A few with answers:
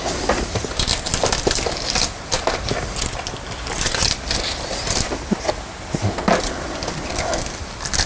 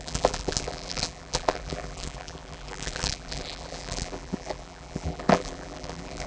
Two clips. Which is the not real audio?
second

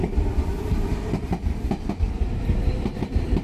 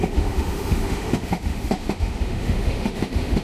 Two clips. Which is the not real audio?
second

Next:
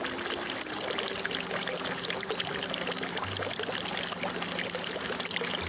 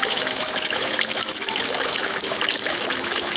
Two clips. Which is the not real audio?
second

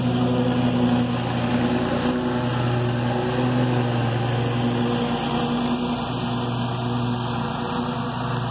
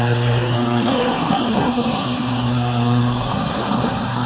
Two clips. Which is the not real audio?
second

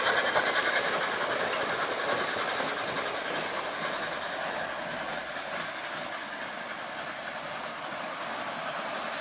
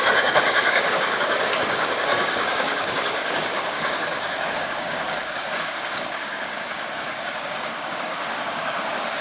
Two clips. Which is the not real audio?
second